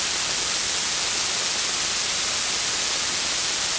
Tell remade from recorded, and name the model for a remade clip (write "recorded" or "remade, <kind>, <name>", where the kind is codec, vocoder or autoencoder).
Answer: recorded